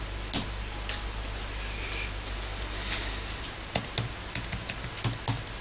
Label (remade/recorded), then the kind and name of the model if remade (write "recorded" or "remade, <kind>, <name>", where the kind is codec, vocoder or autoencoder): recorded